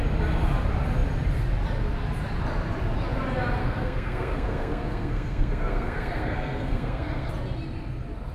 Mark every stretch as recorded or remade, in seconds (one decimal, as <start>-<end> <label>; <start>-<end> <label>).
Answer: 0.0-3.6 recorded; 3.6-7.3 remade; 7.3-8.3 recorded